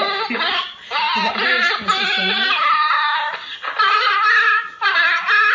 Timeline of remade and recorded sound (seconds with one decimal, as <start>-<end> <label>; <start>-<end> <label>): 0.0-5.5 recorded